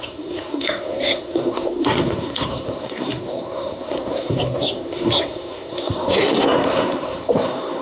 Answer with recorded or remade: remade